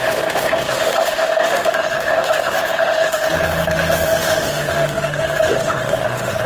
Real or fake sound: fake